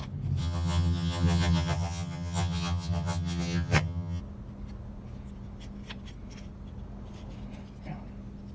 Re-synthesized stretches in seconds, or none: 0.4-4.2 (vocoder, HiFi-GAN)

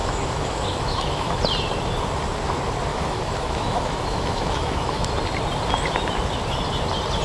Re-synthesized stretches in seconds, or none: 0.0-1.4 (autoencoder, DAC-VAE); 2.9-5.1

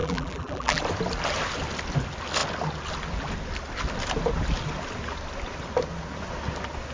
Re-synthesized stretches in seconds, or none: 0.0-0.8 (vocoder, BigVGAN v2)